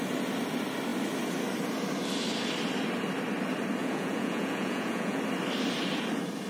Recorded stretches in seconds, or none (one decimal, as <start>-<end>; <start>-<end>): 0.0-3.8; 5.2-6.5